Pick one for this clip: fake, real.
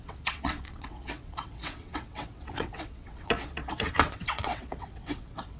fake